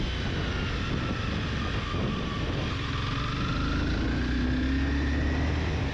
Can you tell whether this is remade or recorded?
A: recorded